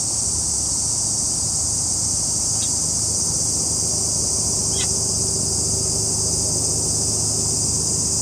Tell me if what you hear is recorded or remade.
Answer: recorded